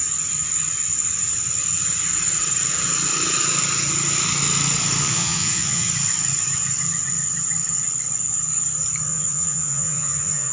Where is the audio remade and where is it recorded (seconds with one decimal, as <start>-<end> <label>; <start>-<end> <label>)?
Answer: 0.0-5.0 recorded; 5.0-5.9 remade; 5.9-9.1 recorded; 9.1-10.5 remade